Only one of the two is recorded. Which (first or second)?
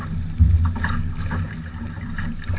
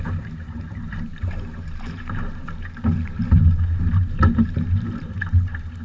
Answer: first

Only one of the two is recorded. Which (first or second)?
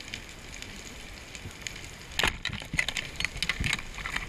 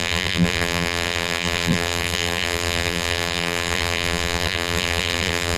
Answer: first